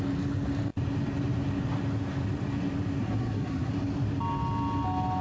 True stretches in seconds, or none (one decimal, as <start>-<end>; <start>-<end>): 0.0-3.0; 3.7-5.2